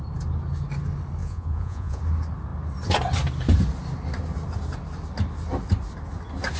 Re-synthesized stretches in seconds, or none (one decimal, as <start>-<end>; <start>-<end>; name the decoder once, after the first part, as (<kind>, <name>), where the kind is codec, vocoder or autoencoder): 1.2-2.0 (vocoder, Vocos)